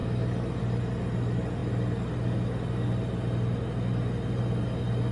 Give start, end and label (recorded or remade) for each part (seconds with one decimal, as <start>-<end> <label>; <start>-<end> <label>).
0.0-5.1 recorded